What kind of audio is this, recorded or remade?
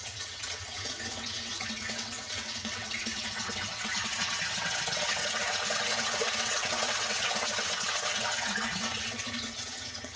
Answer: remade